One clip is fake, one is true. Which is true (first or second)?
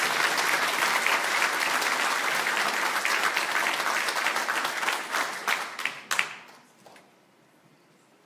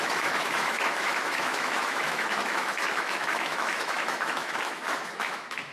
first